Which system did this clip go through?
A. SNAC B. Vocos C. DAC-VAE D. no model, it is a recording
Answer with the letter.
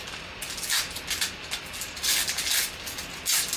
D